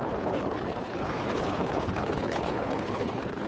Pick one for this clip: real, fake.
fake